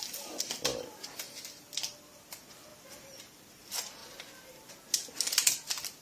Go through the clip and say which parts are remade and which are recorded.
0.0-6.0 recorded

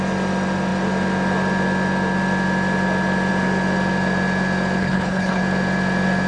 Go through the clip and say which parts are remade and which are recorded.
0.0-4.8 recorded; 4.8-5.4 remade; 5.4-6.3 recorded